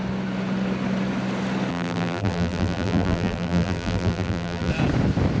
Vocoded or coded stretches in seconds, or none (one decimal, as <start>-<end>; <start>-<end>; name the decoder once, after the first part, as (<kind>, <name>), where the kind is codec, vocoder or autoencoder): 1.7-4.7 (vocoder, BigVGAN v2)